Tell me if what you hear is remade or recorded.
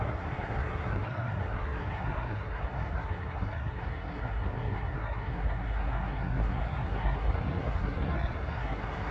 remade